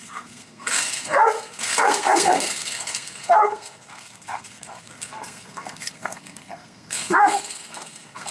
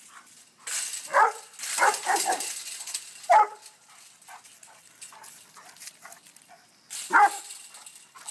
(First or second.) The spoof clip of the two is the first